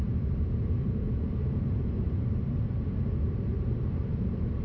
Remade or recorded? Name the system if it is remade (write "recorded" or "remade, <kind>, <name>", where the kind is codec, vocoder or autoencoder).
remade, vocoder, BigVGAN v2